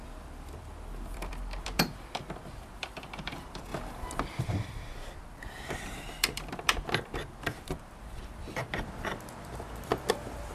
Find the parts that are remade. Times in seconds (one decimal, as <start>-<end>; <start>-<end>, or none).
0.0-3.7; 4.4-10.5